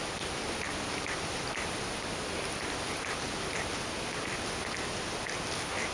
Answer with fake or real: real